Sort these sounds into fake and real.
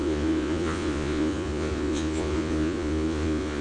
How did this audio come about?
fake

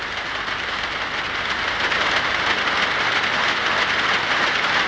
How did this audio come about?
real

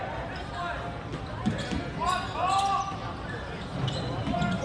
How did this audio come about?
real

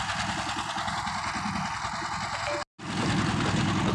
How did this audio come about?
real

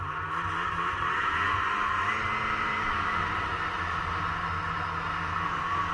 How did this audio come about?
real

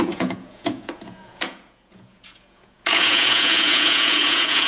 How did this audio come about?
fake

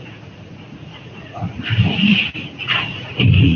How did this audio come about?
fake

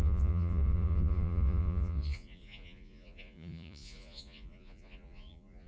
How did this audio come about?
fake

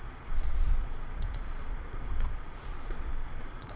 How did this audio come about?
fake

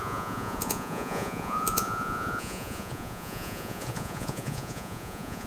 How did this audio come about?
fake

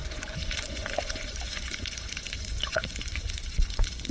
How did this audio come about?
fake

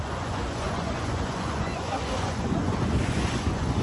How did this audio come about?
fake